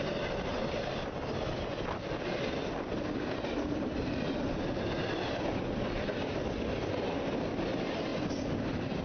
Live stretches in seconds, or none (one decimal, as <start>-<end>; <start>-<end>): 0.0-9.0